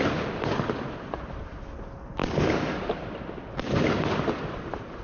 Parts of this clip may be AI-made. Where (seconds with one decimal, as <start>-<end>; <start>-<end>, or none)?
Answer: 2.2-2.8